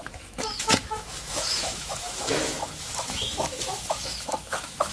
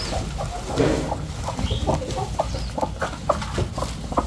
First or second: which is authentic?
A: second